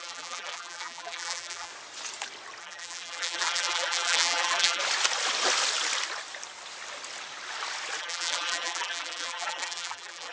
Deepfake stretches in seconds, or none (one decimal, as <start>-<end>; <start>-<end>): 0.0-1.7; 2.6-4.8; 8.0-10.3